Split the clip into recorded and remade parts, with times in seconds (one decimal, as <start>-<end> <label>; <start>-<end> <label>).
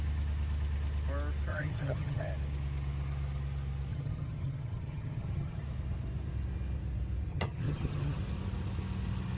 0.0-1.5 recorded; 1.5-2.3 remade; 2.3-3.9 recorded; 3.9-5.6 remade; 5.6-7.3 recorded; 7.3-8.2 remade; 8.2-9.4 recorded